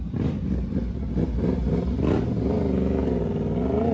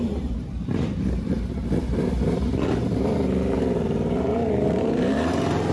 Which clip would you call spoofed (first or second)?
second